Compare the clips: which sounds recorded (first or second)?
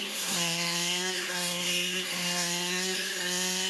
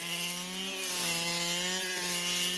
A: second